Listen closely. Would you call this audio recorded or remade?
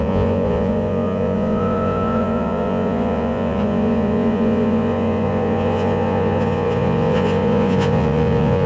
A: remade